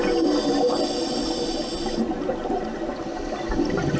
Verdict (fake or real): real